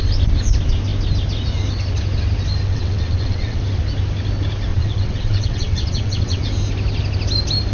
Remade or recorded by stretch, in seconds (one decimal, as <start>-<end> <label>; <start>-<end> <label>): 0.0-2.7 recorded; 2.7-3.6 remade; 3.6-4.7 recorded; 4.7-6.4 remade; 6.4-7.7 recorded